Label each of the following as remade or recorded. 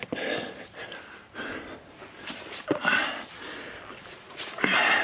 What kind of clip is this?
recorded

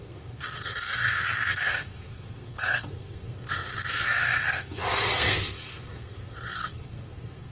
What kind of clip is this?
remade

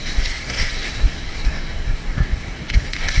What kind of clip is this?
remade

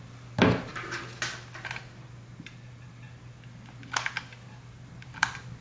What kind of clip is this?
recorded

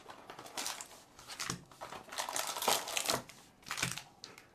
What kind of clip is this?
recorded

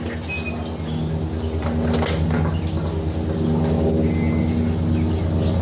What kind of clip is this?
recorded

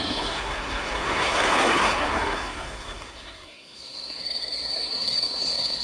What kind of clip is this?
remade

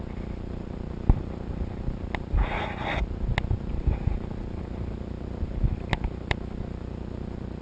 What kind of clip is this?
recorded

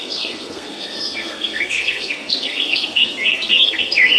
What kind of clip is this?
remade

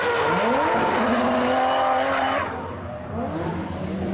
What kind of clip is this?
recorded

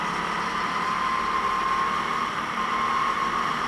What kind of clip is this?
recorded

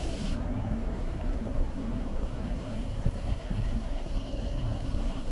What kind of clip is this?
remade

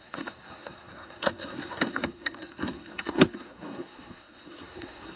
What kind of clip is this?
remade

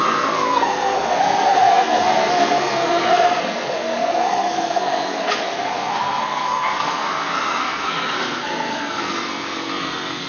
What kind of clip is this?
remade